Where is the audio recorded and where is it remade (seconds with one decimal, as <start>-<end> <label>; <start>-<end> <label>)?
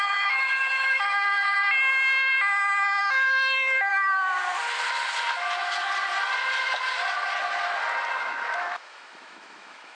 0.0-1.6 remade; 1.6-3.0 recorded; 3.0-3.9 remade; 3.9-8.2 recorded; 8.2-9.9 remade